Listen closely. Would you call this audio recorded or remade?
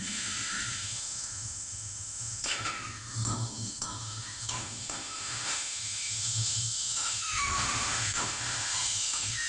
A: remade